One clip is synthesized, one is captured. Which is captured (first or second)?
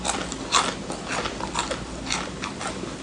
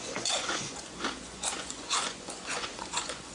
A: first